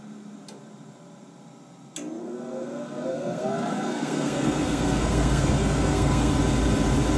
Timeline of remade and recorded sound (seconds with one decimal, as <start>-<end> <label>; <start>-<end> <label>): 0.0-2.2 recorded; 2.2-6.3 remade; 6.3-7.2 recorded